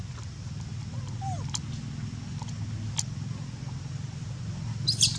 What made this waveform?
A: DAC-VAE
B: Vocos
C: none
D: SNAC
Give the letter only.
C